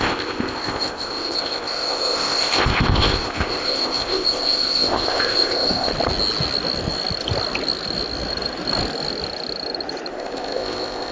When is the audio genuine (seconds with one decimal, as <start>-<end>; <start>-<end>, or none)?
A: 5.9-10.1